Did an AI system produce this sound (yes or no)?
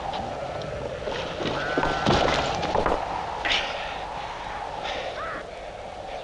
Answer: no